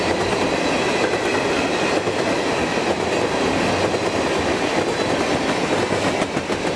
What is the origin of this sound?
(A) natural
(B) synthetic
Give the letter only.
A